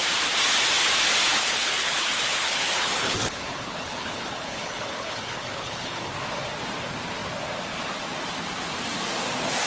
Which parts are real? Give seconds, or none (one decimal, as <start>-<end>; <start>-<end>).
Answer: 0.0-1.4; 6.1-9.7